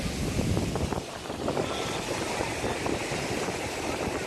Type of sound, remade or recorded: recorded